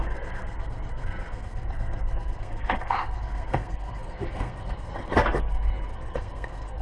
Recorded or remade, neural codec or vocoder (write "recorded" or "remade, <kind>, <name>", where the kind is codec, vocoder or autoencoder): remade, codec, SNAC